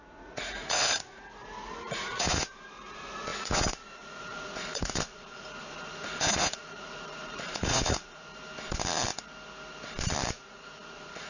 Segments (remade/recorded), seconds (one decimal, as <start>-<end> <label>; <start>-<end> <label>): 0.0-8.3 remade; 8.3-10.3 recorded; 10.3-11.3 remade